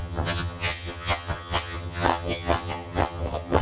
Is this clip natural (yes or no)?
no